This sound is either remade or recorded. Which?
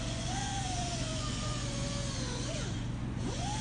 remade